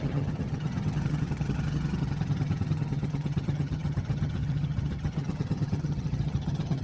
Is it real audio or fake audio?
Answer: fake